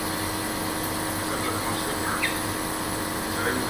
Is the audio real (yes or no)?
yes